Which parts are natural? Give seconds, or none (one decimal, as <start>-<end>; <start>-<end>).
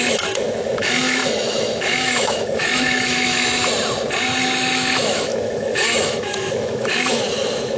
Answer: 3.7-4.4